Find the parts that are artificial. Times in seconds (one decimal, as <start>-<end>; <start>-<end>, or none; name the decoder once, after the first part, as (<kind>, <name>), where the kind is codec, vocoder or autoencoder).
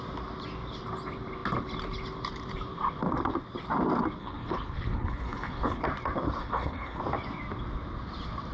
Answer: 4.2-5.8 (codec, HILCodec); 6.4-7.0